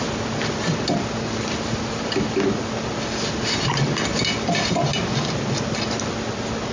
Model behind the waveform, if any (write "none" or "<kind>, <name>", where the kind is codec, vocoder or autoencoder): none